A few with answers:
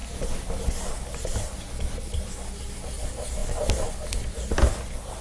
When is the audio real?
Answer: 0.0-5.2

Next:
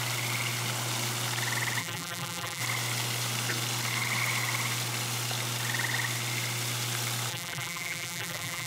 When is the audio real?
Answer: 0.0-1.8; 2.6-7.3

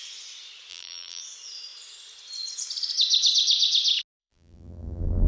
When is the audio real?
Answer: 0.0-0.7; 1.2-4.2

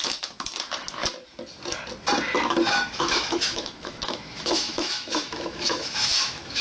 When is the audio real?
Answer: 1.0-2.4

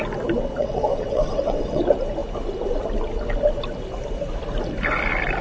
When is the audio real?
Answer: 0.0-0.6; 1.8-5.4